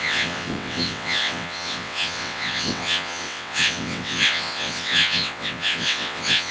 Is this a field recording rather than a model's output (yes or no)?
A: no